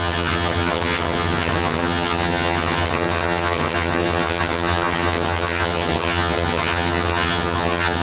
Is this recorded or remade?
remade